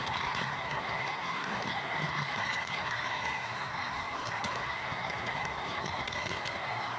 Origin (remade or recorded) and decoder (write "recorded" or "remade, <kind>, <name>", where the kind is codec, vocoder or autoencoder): remade, codec, SNAC